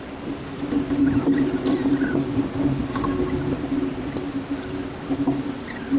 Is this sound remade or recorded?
recorded